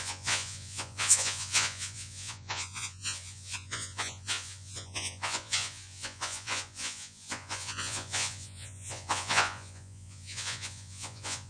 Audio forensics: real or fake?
fake